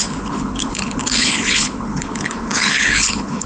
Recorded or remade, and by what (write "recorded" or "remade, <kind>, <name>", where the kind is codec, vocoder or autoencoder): remade, codec, HILCodec